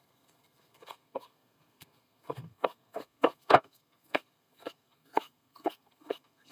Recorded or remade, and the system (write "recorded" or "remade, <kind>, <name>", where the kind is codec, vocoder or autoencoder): remade, codec, SNAC